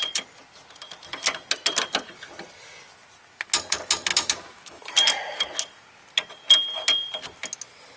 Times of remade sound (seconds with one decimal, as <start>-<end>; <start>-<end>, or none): 4.1-4.8